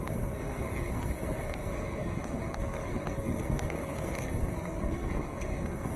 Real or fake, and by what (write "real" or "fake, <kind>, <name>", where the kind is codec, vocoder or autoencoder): fake, codec, SNAC